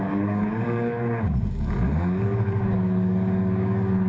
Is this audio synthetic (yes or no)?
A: yes